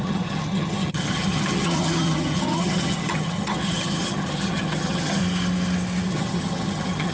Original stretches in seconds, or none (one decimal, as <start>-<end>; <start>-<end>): 5.2-6.1